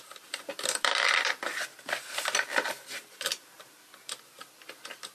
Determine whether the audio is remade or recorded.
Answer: recorded